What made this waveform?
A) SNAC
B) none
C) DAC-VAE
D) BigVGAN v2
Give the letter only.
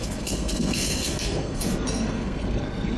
A